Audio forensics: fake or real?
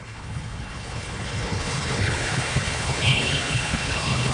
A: fake